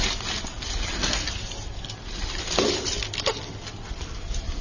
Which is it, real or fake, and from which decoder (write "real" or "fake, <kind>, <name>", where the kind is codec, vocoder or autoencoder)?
real